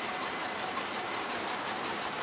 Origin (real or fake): fake